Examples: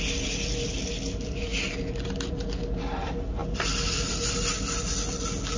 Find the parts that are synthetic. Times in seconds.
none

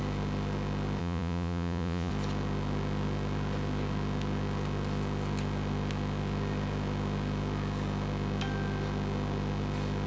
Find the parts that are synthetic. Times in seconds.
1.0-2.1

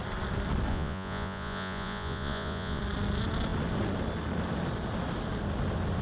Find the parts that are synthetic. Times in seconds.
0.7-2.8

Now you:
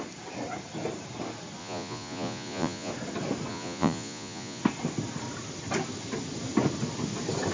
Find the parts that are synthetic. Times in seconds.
1.6-2.9; 3.5-4.6